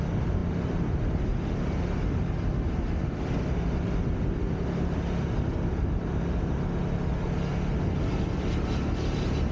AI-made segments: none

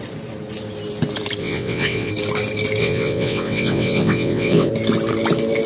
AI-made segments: 1.4-2.1 (vocoder, WaveNeXt); 2.8-4.7